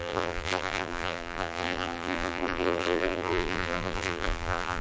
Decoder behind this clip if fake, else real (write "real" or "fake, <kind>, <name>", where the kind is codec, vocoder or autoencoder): fake, vocoder, BigVGAN v2